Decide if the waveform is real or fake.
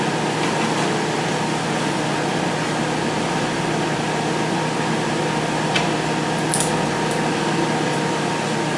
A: real